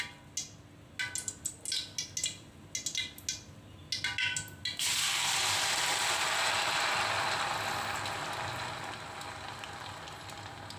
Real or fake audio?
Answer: real